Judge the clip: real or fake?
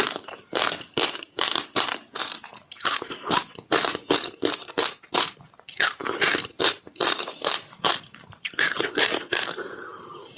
fake